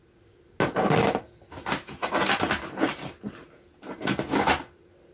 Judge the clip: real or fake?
real